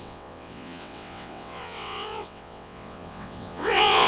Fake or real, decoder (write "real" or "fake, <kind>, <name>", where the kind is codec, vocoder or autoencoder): fake, vocoder, WaveNeXt